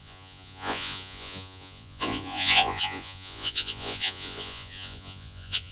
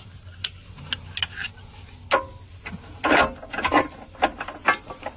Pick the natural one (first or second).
second